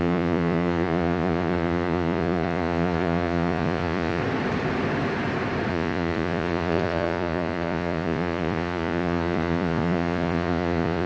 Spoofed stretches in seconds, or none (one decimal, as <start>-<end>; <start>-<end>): 0.0-4.2; 5.7-11.1